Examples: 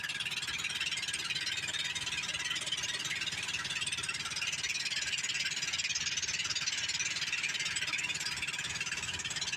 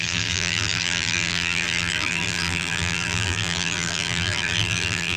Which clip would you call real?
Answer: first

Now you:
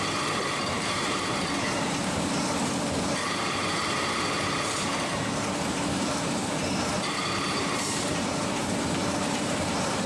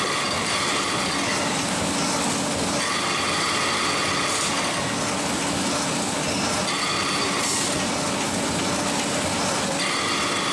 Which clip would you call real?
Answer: second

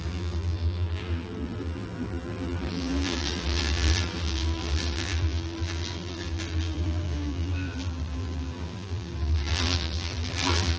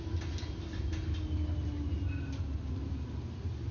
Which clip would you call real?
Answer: second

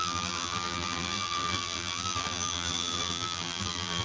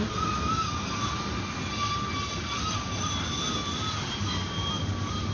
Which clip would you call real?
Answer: second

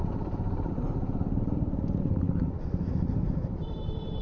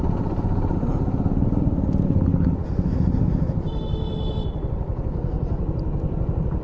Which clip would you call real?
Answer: second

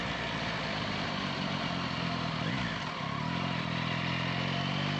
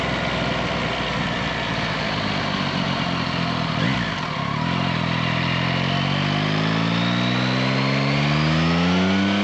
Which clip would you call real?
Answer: second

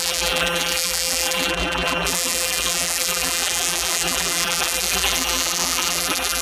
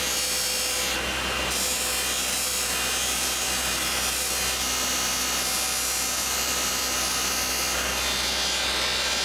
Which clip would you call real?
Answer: second